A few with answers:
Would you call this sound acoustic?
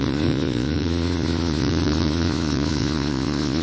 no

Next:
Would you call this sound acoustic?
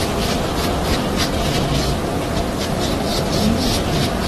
yes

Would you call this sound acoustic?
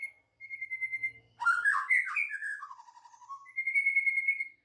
yes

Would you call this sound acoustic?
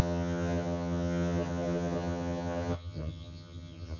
no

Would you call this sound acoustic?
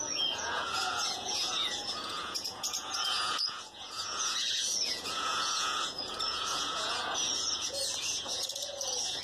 no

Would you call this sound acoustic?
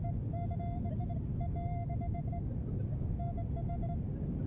yes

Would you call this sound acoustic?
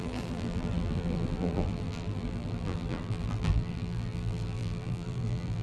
no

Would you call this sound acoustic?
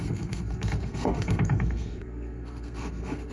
no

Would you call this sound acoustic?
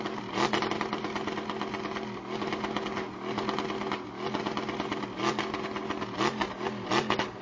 yes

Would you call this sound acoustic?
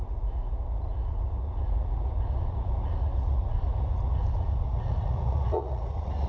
no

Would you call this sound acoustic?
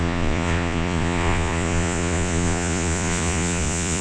no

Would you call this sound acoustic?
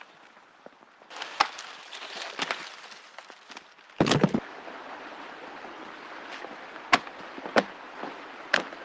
yes